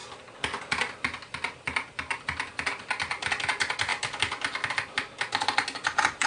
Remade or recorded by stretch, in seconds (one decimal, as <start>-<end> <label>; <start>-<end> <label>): 0.0-6.3 recorded

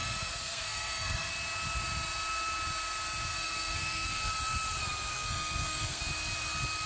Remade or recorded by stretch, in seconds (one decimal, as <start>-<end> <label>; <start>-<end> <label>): 0.0-1.3 remade; 1.3-3.3 recorded; 3.3-4.3 remade; 4.3-5.1 recorded; 5.1-6.0 remade; 6.0-6.9 recorded